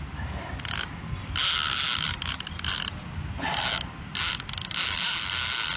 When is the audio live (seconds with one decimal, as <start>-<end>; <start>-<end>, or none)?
0.0-5.8